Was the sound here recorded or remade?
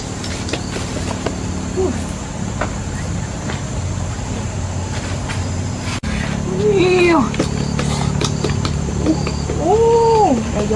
recorded